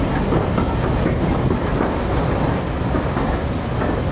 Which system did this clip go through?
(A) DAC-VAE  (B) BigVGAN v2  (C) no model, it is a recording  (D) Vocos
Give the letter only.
C